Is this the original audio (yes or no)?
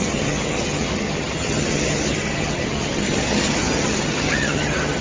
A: no